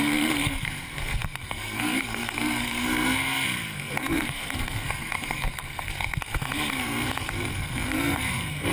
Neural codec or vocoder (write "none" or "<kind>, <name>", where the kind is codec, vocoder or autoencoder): codec, SNAC